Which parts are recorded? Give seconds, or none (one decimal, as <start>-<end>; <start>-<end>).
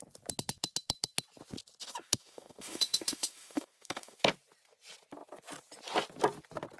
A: 0.0-1.8; 4.2-6.8